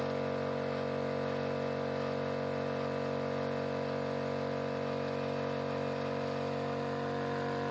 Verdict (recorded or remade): recorded